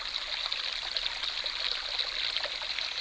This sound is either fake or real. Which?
real